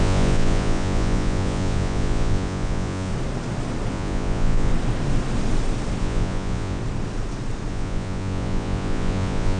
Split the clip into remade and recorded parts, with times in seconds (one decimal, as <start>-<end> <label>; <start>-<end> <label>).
0.0-3.1 remade; 3.1-3.9 recorded; 3.9-4.7 remade; 4.7-6.0 recorded; 6.0-6.8 remade; 6.8-7.7 recorded; 7.7-9.6 remade